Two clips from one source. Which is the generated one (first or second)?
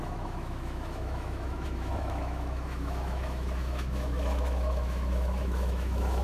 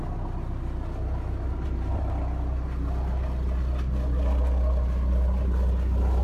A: first